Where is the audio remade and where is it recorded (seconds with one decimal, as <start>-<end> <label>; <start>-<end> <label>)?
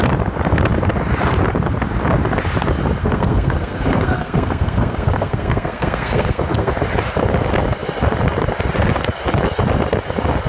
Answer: 0.0-3.0 recorded; 3.0-6.7 remade; 6.7-10.5 recorded